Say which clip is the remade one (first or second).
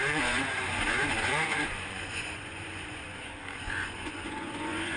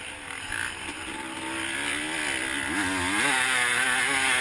first